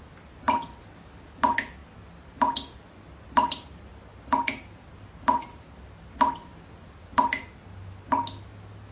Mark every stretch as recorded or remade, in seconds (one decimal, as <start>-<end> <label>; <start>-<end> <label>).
0.0-1.8 recorded; 1.8-5.6 remade; 5.6-6.5 recorded; 6.5-8.1 remade; 8.1-8.9 recorded